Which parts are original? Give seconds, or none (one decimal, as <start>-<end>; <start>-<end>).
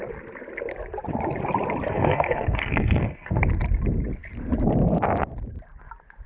0.0-1.9; 3.4-6.3